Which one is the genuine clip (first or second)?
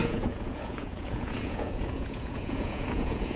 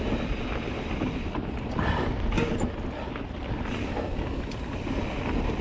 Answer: second